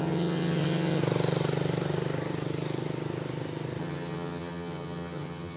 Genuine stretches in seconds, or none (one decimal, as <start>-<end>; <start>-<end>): 1.0-3.8